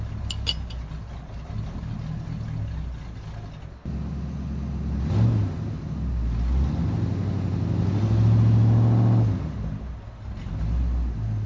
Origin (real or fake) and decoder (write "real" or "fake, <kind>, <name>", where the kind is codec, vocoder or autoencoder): real